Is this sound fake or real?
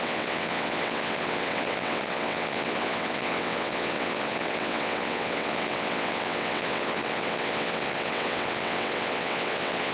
fake